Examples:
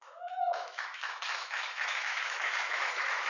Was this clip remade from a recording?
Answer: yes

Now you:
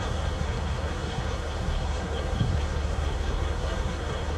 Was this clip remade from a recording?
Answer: yes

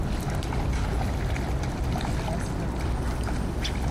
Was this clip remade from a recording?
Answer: no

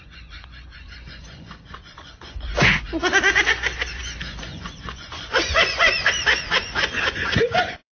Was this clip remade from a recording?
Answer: yes